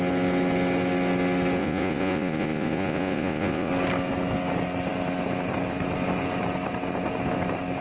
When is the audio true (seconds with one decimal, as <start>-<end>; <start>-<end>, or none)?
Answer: 0.0-1.6; 3.7-7.8